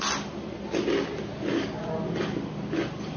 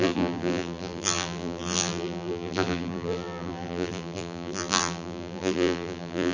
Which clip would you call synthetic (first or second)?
second